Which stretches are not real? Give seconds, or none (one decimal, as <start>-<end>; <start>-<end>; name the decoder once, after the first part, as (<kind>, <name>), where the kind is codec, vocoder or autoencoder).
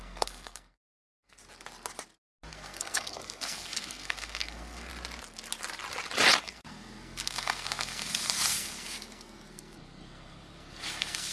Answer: 0.0-1.4 (codec, SNAC); 2.5-4.9; 6.4-11.3